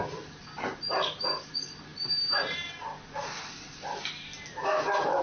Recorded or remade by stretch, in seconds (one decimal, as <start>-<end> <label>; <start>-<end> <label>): 0.0-5.2 recorded